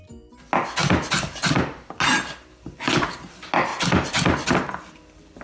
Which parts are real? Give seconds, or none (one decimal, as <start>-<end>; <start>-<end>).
0.0-5.4